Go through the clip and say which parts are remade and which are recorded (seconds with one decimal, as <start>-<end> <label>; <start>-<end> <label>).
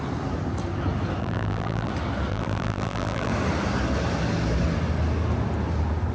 0.0-1.2 recorded; 1.2-1.9 remade; 1.9-2.3 recorded; 2.3-3.3 remade; 3.3-6.1 recorded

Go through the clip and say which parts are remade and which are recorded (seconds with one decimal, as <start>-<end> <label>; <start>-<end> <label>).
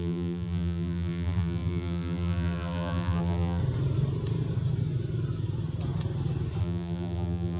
0.0-3.6 remade; 3.6-6.6 recorded; 6.6-7.6 remade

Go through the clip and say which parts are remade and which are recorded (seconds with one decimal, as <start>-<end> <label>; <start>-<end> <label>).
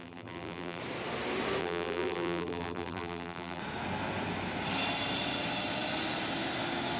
0.0-0.8 remade; 0.8-1.6 recorded; 1.6-3.6 remade; 3.6-7.0 recorded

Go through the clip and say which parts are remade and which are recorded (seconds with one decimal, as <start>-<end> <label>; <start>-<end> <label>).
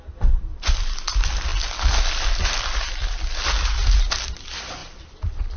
0.0-0.5 recorded; 0.5-1.1 remade; 1.1-1.5 recorded; 1.5-3.3 remade; 3.3-4.8 recorded; 4.8-5.6 remade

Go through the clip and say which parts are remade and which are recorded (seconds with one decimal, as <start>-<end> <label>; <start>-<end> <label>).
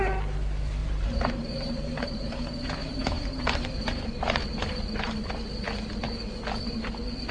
0.0-0.8 recorded; 0.8-5.2 remade; 5.2-7.3 recorded